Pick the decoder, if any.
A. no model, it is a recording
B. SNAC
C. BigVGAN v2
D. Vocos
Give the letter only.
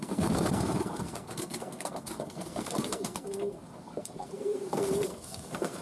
B